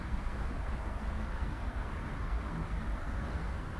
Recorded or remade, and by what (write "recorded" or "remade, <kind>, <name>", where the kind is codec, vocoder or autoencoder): remade, codec, SNAC